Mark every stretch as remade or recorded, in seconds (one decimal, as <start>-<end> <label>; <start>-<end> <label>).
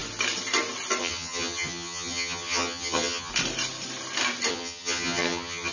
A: 0.0-1.0 recorded; 1.0-3.3 remade; 3.3-4.5 recorded; 4.5-5.7 remade